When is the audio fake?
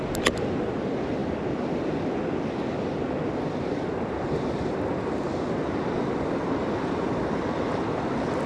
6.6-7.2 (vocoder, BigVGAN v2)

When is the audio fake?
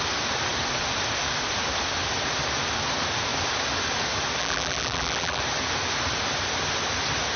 4.4-5.4 (vocoder, BigVGAN v2)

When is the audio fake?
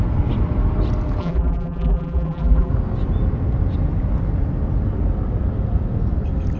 1.2-2.7 (vocoder, BigVGAN v2)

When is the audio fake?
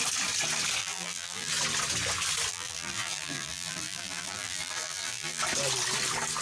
0.8-1.5 (vocoder, BigVGAN v2); 2.5-5.4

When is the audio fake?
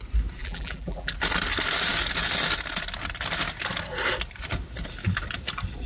0.4-1.1 (vocoder, BigVGAN v2)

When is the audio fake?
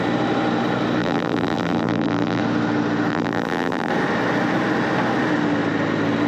1.0-2.4 (vocoder, BigVGAN v2); 3.1-3.9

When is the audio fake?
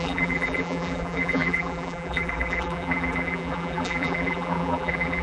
0.0-5.2 (vocoder, BigVGAN v2)